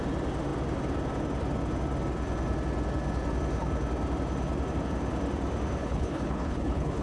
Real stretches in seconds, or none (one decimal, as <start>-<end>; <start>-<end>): 0.0-5.8